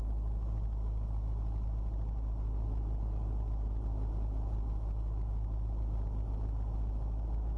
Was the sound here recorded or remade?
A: recorded